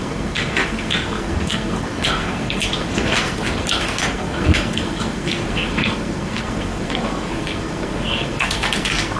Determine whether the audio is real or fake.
fake